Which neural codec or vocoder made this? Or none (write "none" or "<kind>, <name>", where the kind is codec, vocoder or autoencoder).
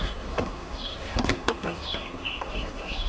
codec, SNAC